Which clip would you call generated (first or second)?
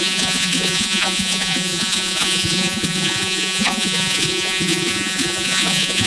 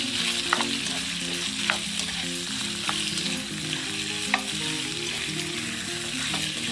first